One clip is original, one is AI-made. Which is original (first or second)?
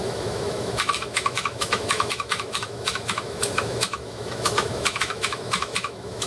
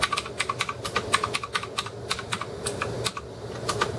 second